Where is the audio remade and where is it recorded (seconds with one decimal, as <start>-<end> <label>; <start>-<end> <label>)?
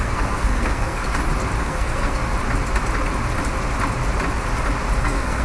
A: 0.0-1.0 remade; 1.0-1.6 recorded; 1.6-2.2 remade; 2.2-5.0 recorded; 5.0-5.4 remade